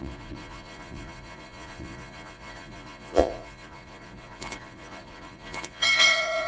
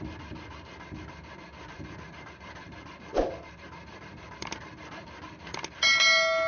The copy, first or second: first